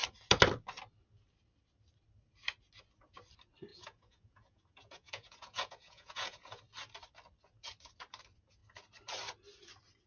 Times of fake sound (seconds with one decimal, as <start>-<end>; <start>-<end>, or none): 3.7-6.6